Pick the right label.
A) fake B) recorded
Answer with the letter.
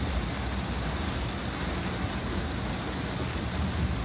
B